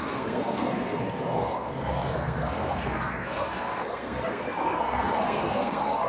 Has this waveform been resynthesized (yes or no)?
yes